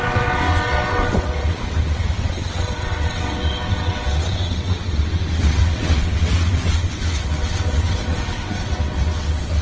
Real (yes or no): no